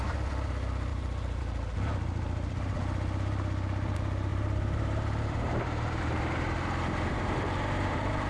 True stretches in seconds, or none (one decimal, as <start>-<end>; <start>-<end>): 0.0-0.9; 1.4-4.3